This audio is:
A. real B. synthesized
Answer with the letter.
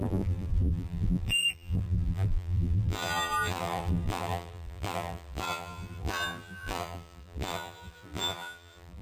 B